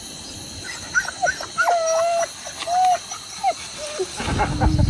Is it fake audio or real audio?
real